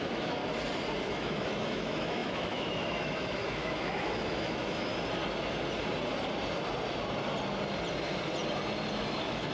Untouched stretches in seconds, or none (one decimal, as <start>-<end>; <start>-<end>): 0.4-1.0; 4.9-8.9

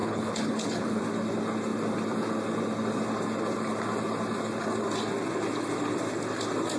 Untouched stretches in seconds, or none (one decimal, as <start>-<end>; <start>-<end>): 1.0-6.8

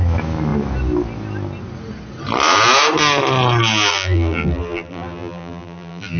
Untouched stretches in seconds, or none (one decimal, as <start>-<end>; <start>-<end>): 0.0-3.9

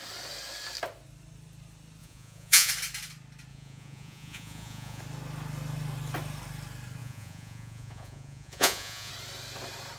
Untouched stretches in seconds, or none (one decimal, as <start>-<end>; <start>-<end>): 0.0-2.0; 2.7-3.5; 5.0-7.0; 9.1-10.0

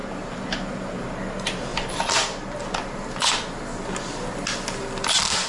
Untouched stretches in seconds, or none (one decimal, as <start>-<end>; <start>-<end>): 1.1-5.5

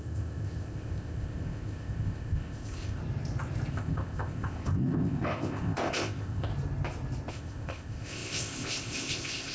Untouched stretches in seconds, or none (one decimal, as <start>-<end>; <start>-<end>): 3.0-3.7; 6.5-7.3

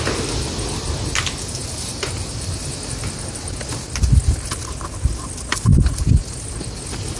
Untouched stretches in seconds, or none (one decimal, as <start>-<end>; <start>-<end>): 0.0-7.2

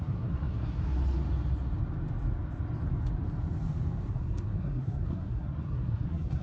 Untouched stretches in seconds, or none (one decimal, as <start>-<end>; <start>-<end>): 1.0-4.1